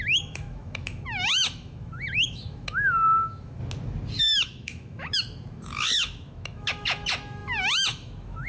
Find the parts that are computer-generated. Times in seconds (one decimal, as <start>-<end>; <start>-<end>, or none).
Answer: 0.0-3.6; 4.2-8.5